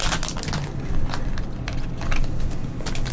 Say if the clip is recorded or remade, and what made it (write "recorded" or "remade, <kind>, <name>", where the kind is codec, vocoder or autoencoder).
recorded